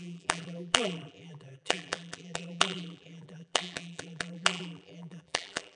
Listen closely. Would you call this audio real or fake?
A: fake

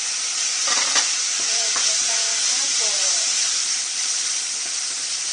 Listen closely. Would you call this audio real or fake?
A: fake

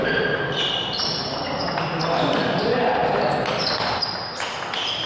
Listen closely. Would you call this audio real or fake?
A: real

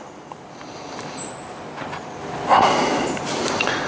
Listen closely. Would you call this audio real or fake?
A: real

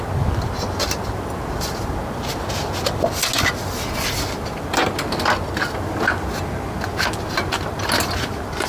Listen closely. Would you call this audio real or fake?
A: real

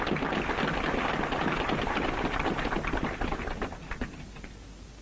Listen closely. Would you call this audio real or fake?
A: real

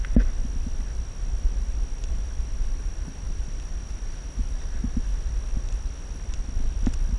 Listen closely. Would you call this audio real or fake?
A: real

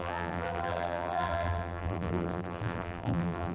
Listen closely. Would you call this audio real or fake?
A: fake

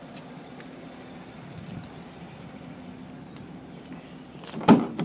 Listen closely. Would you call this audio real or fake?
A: real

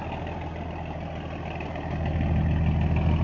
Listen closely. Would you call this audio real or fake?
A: real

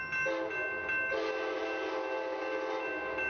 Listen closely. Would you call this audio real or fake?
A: real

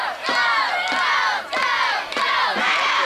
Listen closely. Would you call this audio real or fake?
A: real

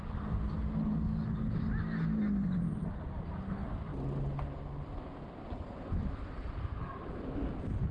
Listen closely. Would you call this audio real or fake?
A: real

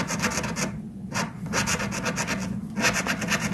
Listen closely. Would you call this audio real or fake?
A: real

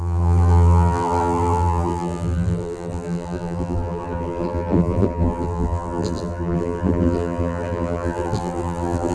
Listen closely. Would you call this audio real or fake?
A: fake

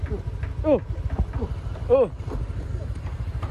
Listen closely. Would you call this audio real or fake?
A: real